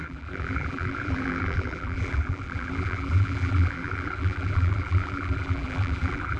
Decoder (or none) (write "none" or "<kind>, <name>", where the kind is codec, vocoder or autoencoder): vocoder, BigVGAN v2